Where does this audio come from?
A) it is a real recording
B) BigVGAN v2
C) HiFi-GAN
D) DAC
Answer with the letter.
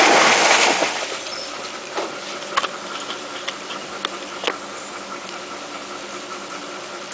A